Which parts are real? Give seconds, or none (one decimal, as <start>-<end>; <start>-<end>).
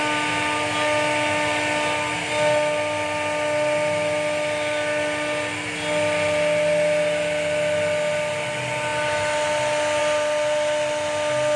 0.0-11.6